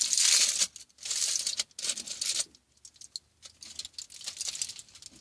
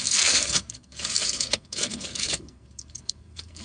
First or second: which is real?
first